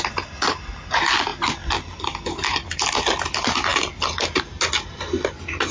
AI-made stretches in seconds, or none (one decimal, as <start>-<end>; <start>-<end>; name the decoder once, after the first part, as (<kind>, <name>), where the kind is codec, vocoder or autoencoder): none